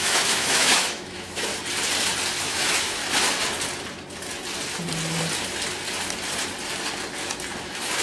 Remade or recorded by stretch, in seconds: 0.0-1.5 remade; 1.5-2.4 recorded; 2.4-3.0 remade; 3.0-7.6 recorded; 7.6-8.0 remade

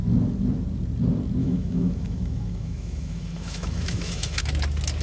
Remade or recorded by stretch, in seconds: 0.0-1.4 recorded; 1.4-4.4 remade; 4.4-5.0 recorded